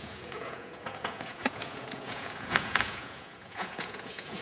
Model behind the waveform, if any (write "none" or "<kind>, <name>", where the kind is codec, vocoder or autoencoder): vocoder, Vocos